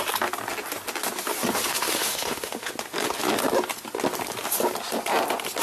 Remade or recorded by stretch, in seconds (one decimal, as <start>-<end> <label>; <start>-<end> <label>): 0.0-1.7 recorded; 1.7-2.7 remade; 2.7-5.6 recorded